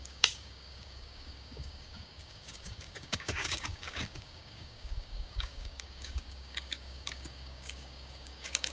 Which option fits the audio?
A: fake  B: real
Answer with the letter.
A